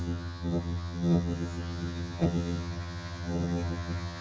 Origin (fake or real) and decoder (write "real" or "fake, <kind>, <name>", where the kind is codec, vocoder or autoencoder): fake, vocoder, HiFi-GAN